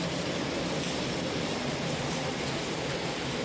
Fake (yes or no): no